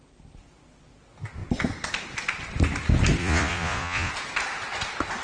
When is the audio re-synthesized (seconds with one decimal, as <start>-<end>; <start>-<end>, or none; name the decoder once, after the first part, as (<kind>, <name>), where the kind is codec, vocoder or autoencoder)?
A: 3.2-4.1 (vocoder, Vocos)